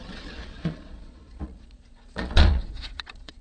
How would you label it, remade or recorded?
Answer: remade